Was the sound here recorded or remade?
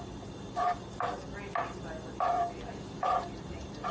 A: recorded